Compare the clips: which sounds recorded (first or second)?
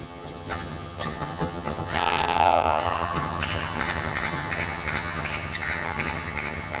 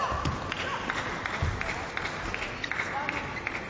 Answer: second